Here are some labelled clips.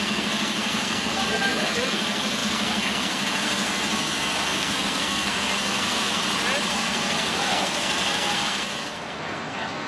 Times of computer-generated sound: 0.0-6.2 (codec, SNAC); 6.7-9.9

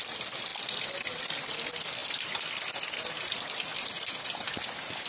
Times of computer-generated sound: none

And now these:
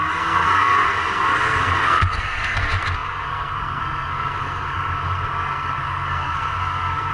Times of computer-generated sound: 0.0-7.1 (codec, SNAC)

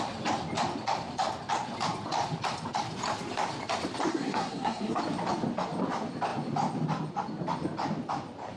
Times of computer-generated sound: 4.1-5.0 (codec, SNAC)